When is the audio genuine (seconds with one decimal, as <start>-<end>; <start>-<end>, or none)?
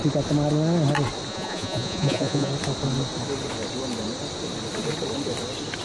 0.0-1.3; 2.5-5.8